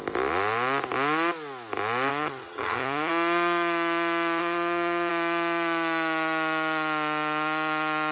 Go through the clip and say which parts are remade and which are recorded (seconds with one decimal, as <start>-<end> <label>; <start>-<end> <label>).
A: 0.0-2.1 recorded; 2.1-3.1 remade; 3.1-4.4 recorded; 4.4-5.1 remade; 5.1-8.1 recorded